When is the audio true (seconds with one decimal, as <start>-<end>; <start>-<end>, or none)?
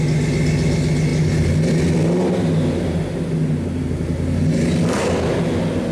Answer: 0.0-5.9